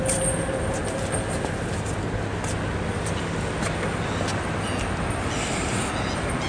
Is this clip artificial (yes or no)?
no